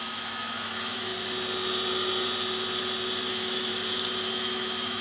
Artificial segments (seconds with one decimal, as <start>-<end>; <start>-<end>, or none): 0.0-1.1; 3.3-3.7; 4.3-5.0